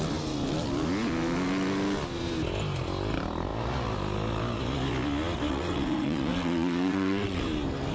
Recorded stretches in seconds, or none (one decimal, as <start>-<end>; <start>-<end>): 0.0-5.5; 7.4-7.9